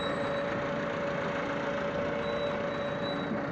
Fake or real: real